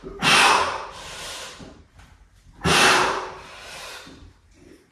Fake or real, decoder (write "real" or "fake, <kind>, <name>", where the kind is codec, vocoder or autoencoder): fake, vocoder, BigVGAN v2